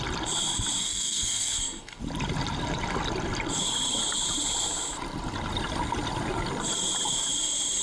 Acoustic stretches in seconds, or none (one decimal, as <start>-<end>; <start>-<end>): 0.0-0.8; 2.0-7.8